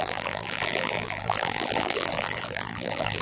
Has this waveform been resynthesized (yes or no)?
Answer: yes